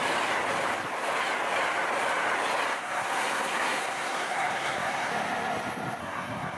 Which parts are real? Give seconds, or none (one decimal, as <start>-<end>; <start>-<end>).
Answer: 0.0-2.7; 5.1-6.0